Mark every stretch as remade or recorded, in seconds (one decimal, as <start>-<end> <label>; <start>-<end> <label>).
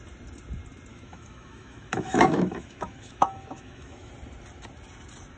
0.0-0.9 recorded; 0.9-4.1 remade; 4.1-5.4 recorded